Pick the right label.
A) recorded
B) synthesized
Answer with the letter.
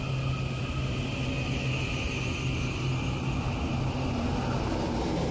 A